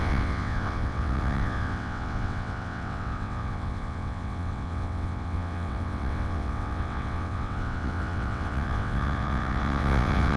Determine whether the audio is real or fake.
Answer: fake